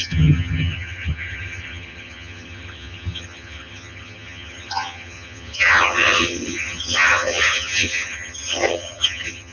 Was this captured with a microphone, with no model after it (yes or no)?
no